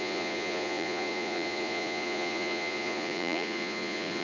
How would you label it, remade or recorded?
remade